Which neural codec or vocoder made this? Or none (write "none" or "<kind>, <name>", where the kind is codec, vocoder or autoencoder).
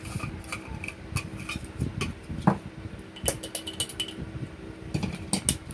none